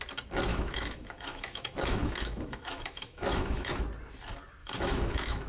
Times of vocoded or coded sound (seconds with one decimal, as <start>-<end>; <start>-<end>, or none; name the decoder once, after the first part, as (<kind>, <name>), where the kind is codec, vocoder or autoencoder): 0.5-3.8 (autoencoder, DAC-VAE); 4.6-5.5